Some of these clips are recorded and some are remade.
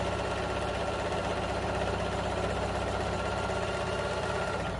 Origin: recorded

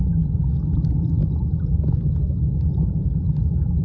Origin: recorded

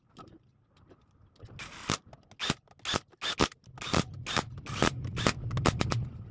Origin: recorded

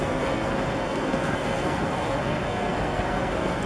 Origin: remade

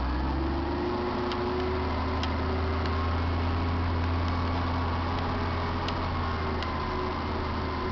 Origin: recorded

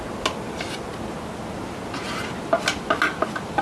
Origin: recorded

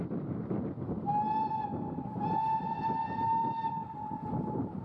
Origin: recorded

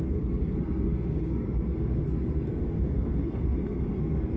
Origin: remade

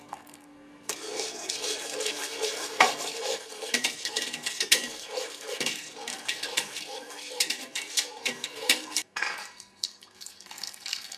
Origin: remade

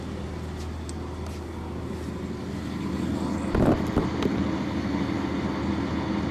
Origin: recorded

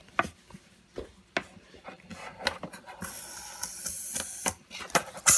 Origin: recorded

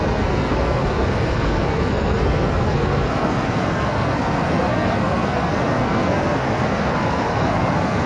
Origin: remade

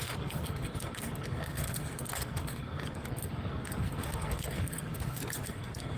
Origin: remade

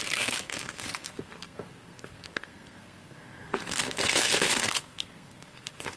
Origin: remade